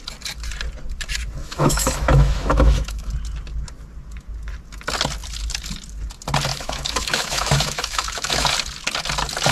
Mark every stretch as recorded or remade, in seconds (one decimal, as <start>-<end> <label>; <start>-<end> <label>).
0.0-1.4 recorded; 1.4-3.1 remade; 3.1-6.5 recorded; 6.5-8.5 remade; 8.5-9.5 recorded